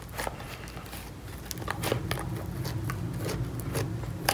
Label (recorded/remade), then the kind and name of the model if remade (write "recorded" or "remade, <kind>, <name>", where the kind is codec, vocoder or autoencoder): recorded